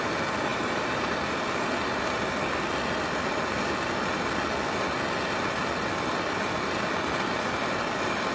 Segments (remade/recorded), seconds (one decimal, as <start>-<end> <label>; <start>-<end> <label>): 0.0-0.5 recorded; 0.5-1.2 remade; 1.2-8.3 recorded